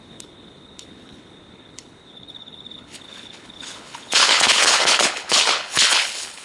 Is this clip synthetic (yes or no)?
yes